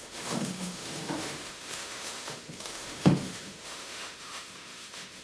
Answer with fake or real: fake